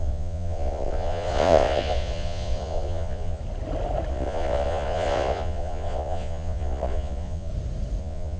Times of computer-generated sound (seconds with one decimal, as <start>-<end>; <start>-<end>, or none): 0.0-3.4; 4.1-7.5; 8.0-8.4